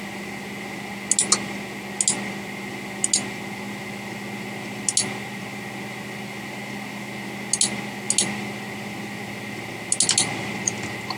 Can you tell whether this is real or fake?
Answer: real